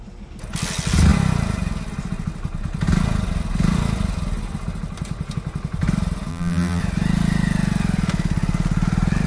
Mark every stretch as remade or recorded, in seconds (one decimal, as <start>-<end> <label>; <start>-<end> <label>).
0.0-6.3 recorded; 6.3-6.8 remade; 6.8-9.3 recorded